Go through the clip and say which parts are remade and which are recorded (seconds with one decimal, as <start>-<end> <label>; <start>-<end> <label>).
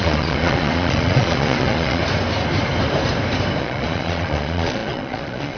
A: 0.0-2.0 remade; 2.0-3.6 recorded; 3.6-5.6 remade